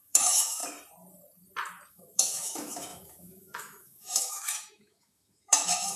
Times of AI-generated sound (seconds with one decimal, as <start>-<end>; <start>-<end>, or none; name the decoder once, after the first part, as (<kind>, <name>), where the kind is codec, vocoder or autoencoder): 0.0-0.6 (autoencoder, DAC-VAE); 1.9-6.0